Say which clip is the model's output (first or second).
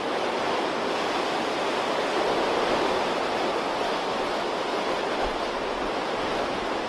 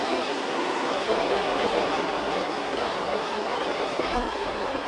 second